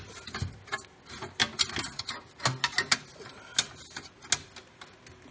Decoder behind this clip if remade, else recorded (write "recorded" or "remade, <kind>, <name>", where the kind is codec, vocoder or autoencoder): recorded